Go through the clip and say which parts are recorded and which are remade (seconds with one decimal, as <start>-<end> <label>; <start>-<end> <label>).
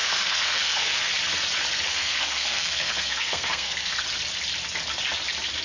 0.0-1.1 remade; 1.1-1.9 recorded; 1.9-4.0 remade; 4.0-5.6 recorded